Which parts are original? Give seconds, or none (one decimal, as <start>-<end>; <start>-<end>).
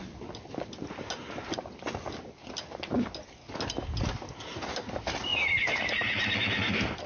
0.0-7.1